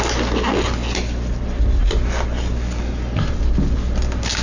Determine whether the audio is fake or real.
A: real